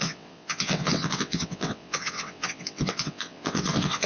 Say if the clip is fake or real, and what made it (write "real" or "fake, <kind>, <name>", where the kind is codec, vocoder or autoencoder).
fake, vocoder, WaveNeXt